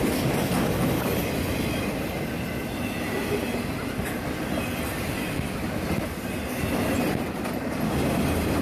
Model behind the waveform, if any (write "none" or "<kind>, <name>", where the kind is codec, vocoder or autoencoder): none